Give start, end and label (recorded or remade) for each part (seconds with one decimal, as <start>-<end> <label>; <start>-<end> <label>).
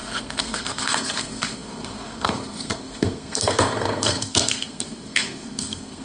0.0-6.0 remade